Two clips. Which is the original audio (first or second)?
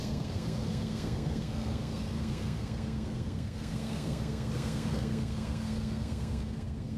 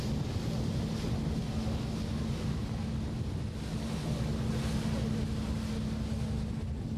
second